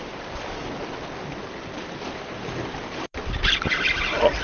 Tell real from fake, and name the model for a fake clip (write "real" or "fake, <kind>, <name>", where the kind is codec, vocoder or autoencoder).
real